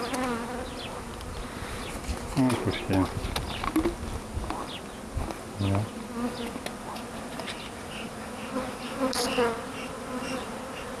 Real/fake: real